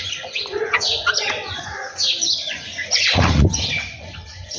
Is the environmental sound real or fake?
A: fake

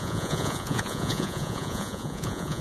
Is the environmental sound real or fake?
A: fake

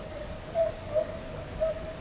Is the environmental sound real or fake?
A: fake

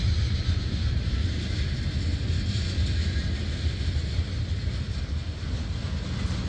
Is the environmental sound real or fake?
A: real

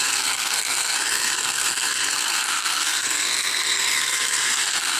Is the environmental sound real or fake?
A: fake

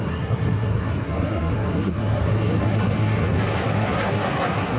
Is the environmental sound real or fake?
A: fake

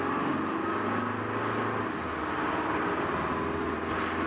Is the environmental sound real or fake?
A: real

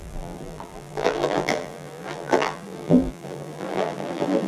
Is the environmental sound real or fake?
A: fake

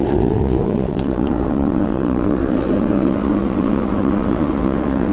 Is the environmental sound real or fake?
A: fake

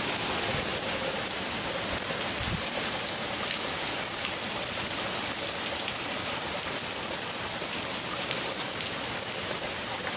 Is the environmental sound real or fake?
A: fake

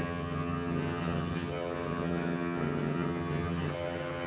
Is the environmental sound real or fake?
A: fake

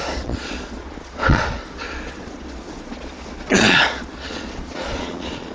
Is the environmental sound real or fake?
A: fake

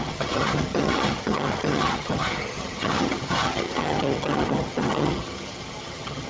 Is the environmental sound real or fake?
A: fake